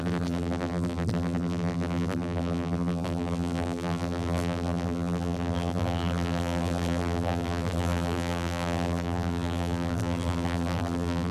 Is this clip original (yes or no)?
no